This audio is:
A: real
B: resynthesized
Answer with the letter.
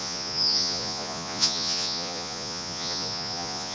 B